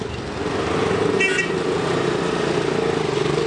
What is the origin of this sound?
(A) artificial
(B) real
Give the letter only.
B